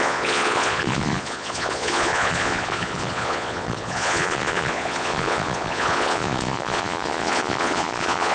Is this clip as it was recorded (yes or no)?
no